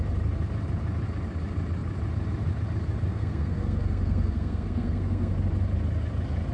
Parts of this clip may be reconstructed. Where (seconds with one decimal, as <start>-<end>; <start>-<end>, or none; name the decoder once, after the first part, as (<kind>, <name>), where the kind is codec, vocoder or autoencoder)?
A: 3.1-5.3 (codec, SNAC)